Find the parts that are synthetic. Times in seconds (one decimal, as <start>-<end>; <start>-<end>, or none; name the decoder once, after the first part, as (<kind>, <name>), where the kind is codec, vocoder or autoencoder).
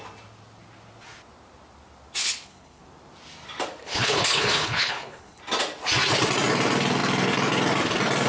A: 2.2-2.8 (codec, HILCodec); 3.8-5.4